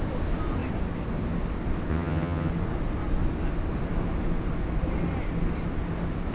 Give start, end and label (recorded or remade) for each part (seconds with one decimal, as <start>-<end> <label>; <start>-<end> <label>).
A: 0.0-1.9 recorded; 1.9-2.5 remade; 2.5-6.3 recorded